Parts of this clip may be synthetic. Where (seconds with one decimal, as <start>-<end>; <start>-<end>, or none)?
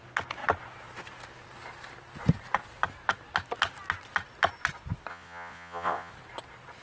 5.1-6.1